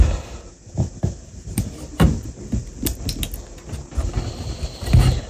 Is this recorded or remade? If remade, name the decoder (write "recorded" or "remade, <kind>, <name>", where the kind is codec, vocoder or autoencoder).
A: recorded